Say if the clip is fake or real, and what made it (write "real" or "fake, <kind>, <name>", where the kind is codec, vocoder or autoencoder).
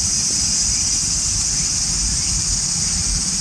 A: real